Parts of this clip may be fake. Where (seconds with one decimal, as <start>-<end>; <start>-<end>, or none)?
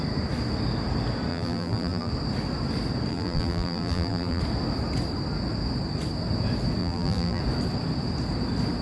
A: 1.3-2.1; 3.1-4.4; 6.8-7.4